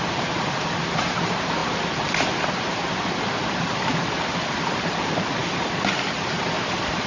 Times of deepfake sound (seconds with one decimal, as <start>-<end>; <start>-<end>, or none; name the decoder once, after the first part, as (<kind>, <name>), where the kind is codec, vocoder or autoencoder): 1.6-4.2 (vocoder, BigVGAN v2)

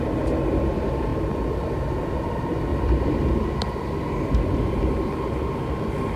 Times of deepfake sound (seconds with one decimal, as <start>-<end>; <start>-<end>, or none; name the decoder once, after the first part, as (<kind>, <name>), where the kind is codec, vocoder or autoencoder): none

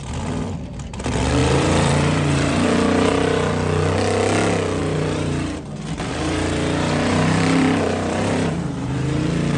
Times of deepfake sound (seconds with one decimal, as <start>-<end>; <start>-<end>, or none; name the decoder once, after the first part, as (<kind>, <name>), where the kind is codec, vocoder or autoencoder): 1.4-3.5 (vocoder, BigVGAN v2); 4.8-9.2